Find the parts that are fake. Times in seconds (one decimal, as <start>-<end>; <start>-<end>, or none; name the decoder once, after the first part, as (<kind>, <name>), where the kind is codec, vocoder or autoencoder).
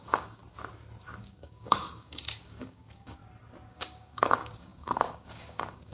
0.0-0.4 (codec, DAC); 1.2-3.2; 3.7-5.9